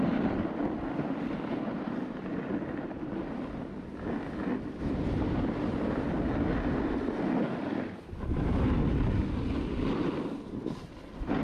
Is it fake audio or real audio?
real